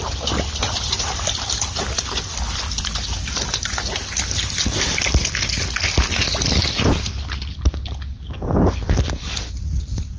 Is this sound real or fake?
real